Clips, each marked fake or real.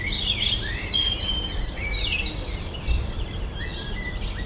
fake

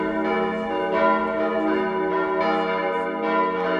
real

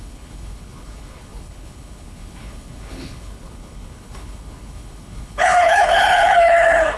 fake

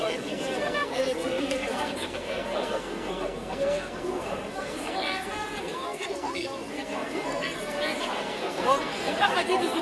fake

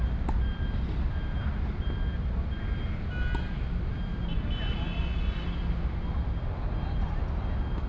real